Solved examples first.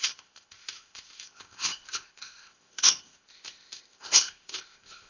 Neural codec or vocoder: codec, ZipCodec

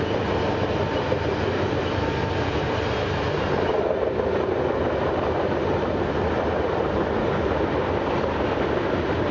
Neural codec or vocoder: none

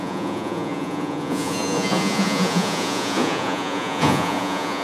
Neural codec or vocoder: vocoder, Vocos